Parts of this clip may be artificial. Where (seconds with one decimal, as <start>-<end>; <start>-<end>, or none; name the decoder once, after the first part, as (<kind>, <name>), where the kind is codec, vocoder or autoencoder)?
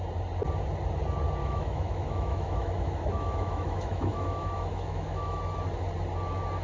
1.4-5.4 (autoencoder, DAC-VAE)